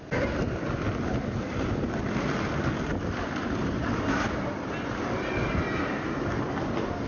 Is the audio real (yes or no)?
yes